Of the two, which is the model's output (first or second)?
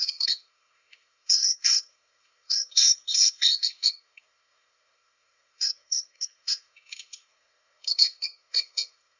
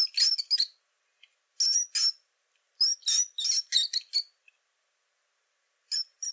first